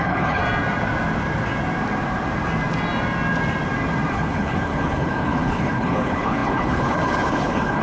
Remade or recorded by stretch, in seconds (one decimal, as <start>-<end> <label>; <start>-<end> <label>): 0.0-0.4 remade; 0.4-4.1 recorded; 4.1-7.8 remade